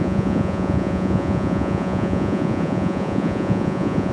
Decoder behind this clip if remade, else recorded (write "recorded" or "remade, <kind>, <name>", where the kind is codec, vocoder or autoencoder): remade, vocoder, Vocos